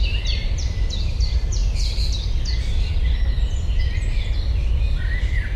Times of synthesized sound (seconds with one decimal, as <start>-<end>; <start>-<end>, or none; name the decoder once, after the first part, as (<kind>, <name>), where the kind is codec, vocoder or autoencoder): 0.0-1.6 (vocoder, BigVGAN v2); 5.0-5.6